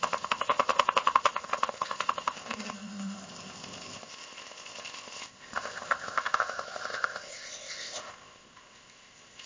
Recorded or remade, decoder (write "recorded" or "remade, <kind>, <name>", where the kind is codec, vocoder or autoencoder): remade, codec, ZipCodec